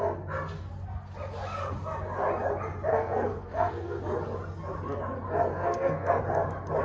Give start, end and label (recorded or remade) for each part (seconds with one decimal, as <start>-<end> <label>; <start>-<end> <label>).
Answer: 0.0-2.9 recorded; 2.9-4.0 remade; 4.0-5.5 recorded; 5.5-6.2 remade; 6.2-6.8 recorded